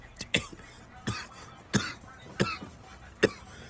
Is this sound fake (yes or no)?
no